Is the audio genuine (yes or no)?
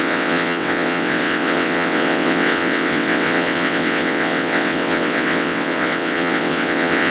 no